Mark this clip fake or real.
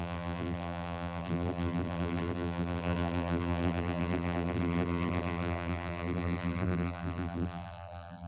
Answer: fake